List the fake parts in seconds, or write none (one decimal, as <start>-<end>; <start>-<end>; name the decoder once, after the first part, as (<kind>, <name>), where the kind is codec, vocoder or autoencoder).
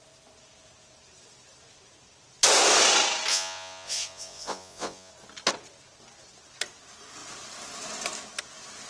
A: 3.3-5.1 (vocoder, Vocos)